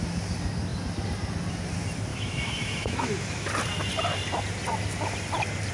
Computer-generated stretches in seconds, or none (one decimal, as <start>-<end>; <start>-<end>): 2.1-3.5